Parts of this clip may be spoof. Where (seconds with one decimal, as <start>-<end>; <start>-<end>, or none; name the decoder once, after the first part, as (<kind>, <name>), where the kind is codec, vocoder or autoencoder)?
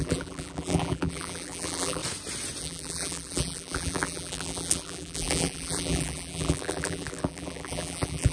0.0-2.0 (vocoder, BigVGAN v2); 2.6-8.3